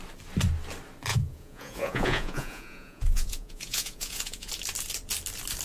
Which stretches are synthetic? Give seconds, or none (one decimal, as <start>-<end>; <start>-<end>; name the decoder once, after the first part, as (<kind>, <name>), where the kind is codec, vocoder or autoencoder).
1.1-4.5 (vocoder, Vocos)

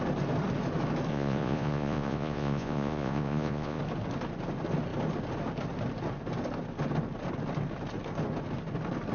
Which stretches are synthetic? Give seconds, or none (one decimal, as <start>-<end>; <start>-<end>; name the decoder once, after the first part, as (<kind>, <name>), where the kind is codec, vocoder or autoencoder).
1.1-3.8 (vocoder, Vocos)

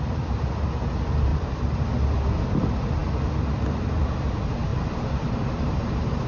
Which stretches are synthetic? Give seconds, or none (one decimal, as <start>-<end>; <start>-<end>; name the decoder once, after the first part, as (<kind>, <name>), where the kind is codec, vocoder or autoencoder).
1.3-1.8 (vocoder, BigVGAN v2); 4.7-6.3

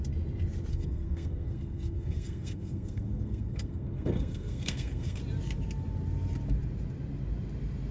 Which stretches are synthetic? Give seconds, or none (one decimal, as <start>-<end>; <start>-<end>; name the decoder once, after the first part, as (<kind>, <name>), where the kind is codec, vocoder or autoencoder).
0.7-5.2 (codec, SNAC)

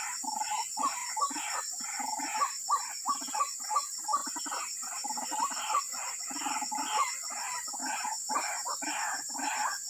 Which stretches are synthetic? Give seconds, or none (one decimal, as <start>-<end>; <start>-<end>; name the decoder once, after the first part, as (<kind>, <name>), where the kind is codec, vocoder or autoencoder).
1.0-3.2 (vocoder, BigVGAN v2); 4.2-5.8; 7.8-9.9